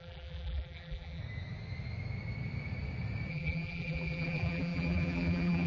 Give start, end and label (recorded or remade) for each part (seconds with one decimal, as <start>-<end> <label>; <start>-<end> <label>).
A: 0.0-1.2 remade; 1.2-3.3 recorded; 3.3-5.7 remade